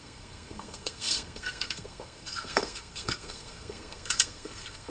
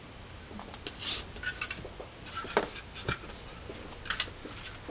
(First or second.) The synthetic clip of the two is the first